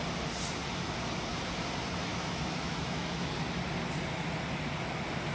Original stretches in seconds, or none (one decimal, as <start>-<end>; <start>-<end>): 0.0-2.1; 3.3-5.3